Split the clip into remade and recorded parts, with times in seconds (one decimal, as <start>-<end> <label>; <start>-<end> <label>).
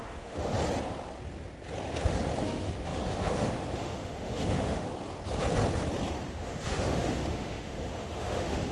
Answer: 0.0-0.5 remade; 0.5-2.4 recorded; 2.4-4.9 remade; 4.9-6.3 recorded; 6.3-8.7 remade